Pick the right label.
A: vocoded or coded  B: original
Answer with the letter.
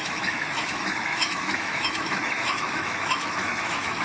A